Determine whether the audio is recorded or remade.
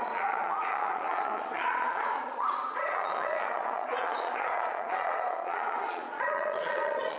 remade